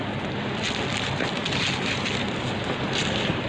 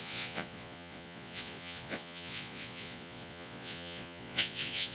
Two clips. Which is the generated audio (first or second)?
second